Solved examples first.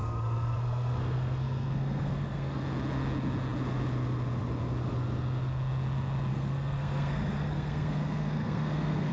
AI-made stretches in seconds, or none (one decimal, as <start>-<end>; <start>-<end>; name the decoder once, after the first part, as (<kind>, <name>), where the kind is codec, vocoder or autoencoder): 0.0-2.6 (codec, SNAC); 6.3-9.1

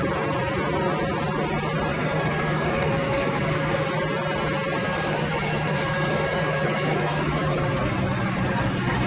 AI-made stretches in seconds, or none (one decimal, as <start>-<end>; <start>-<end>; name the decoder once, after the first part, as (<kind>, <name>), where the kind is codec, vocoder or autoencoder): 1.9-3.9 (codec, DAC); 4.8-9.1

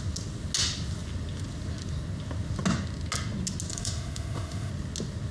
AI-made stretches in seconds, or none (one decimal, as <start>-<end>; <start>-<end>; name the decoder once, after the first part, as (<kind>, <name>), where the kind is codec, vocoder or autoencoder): 3.7-4.7 (autoencoder, DAC-VAE)